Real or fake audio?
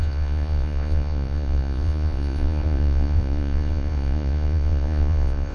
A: fake